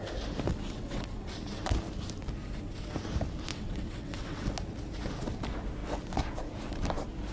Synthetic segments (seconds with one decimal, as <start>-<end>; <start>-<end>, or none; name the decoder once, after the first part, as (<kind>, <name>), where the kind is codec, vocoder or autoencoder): 0.5-1.3 (vocoder, WaveNeXt); 3.5-4.5